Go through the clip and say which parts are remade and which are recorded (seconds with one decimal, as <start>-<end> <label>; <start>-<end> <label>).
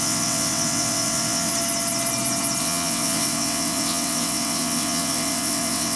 0.0-1.5 remade; 1.5-2.6 recorded; 2.6-6.0 remade